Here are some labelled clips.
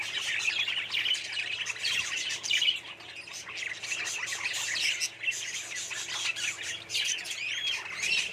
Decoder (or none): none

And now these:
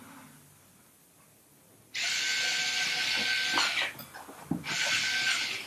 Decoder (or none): none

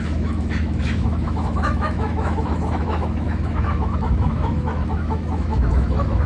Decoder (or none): autoencoder, DAC-VAE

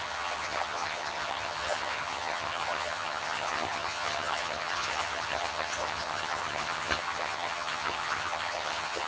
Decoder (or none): vocoder, HiFi-GAN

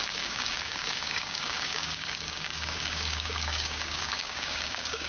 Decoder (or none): codec, DAC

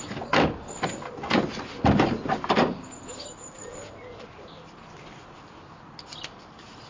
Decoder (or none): none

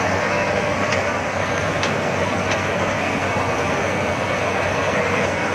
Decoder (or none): codec, SNAC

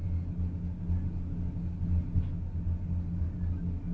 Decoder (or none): none